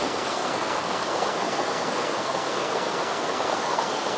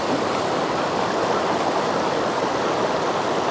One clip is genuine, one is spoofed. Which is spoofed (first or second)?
first